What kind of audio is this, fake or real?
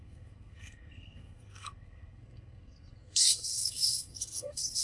fake